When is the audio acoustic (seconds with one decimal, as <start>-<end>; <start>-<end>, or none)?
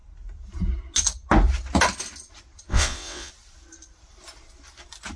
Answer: 0.0-2.7; 3.3-5.2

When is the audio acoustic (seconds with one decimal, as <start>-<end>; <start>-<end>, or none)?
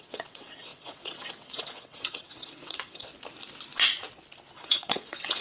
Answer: 3.1-4.5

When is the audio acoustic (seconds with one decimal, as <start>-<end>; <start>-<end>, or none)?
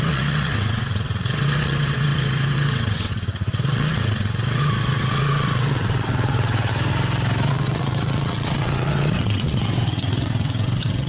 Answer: 6.7-7.5